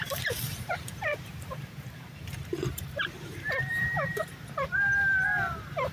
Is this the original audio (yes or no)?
no